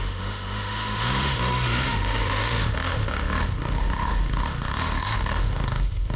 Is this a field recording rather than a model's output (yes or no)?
no